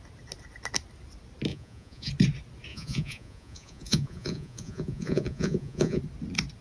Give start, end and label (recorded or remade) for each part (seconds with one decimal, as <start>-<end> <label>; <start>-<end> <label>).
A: 0.0-1.5 recorded; 1.5-2.1 remade; 2.1-2.7 recorded; 2.7-6.0 remade; 6.0-6.6 recorded